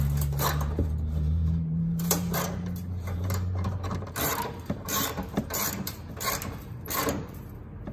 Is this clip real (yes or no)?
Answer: no